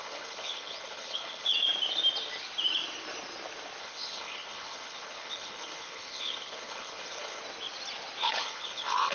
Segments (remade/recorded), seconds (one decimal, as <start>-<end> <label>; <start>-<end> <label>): 0.0-1.5 remade; 1.5-3.8 recorded; 3.8-7.4 remade; 7.4-8.2 recorded; 8.2-9.1 remade

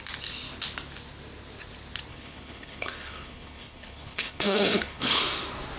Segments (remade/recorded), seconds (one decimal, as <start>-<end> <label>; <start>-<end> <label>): 0.0-2.1 recorded; 2.1-5.2 remade; 5.2-5.8 recorded

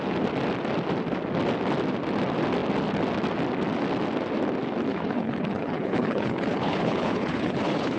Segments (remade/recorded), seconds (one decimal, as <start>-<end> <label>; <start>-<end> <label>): 0.0-4.9 recorded; 4.9-8.0 remade

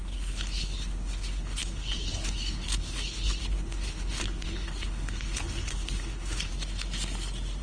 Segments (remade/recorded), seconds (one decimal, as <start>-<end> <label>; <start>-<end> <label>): 0.0-6.5 remade; 6.5-7.6 recorded

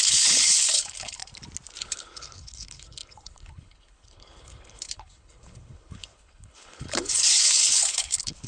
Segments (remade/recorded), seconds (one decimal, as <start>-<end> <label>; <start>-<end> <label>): 0.0-1.2 remade; 1.2-1.8 recorded; 1.8-8.5 remade

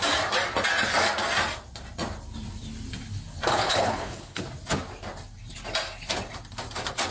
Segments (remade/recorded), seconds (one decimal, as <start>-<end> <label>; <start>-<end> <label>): 0.0-3.5 recorded; 3.5-4.4 remade; 4.4-7.1 recorded

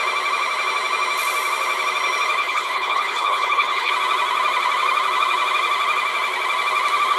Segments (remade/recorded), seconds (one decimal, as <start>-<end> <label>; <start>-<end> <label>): 0.0-2.4 recorded; 2.4-3.9 remade; 3.9-7.2 recorded

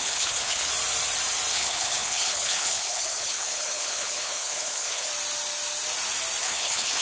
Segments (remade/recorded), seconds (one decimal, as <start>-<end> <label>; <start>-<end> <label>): 0.0-0.7 remade; 0.7-1.5 recorded; 1.5-5.1 remade; 5.1-6.4 recorded; 6.4-7.0 remade